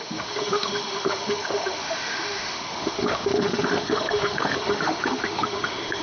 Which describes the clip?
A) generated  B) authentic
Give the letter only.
A